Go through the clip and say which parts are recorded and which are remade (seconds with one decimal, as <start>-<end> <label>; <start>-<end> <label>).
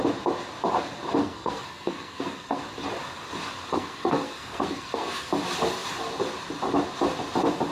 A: 0.0-1.2 recorded; 1.2-2.6 remade; 2.6-3.7 recorded; 3.7-5.3 remade; 5.3-7.7 recorded